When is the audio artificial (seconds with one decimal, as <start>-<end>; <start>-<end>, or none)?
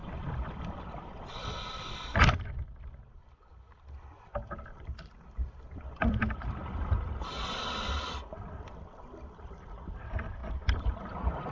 0.0-11.5